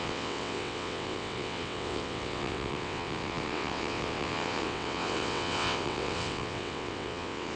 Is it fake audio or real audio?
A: fake